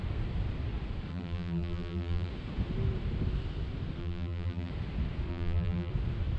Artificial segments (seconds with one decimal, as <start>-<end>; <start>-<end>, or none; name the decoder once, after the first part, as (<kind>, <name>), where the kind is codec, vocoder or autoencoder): 1.1-2.3 (vocoder, BigVGAN v2); 4.0-4.7; 5.3-5.9